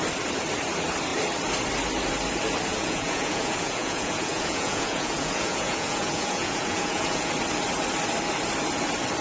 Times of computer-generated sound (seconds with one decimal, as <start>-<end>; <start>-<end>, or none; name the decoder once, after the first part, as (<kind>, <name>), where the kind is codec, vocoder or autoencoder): 2.7-7.3 (vocoder, Vocos)